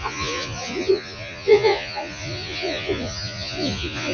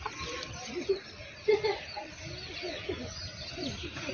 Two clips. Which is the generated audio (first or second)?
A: first